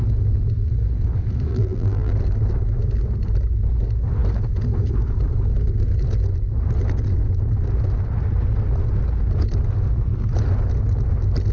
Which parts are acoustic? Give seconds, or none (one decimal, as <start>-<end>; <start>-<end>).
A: 0.0-1.5; 2.1-11.5